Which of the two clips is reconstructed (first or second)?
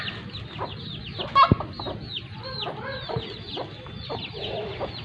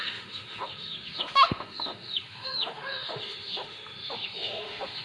second